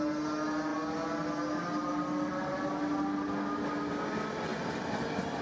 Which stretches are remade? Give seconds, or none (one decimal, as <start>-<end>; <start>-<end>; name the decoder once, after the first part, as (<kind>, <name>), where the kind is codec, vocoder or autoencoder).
4.5-5.4 (vocoder, BigVGAN v2)